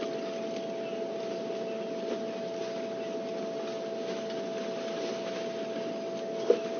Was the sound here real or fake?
real